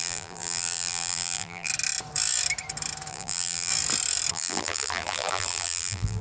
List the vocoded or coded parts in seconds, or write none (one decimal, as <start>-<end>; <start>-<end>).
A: 0.0-1.7; 3.1-3.7; 4.3-6.2